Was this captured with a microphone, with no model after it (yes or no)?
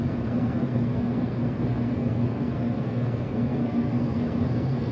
no